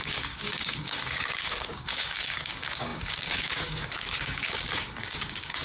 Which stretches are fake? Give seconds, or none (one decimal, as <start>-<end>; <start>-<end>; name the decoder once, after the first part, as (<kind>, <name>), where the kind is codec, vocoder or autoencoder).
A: 0.0-5.6 (codec, DAC)